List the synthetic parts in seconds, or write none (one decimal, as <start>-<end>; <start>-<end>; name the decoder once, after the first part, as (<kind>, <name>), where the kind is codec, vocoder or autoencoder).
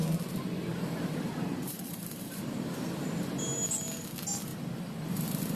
0.7-3.3 (vocoder, BigVGAN v2); 4.5-5.6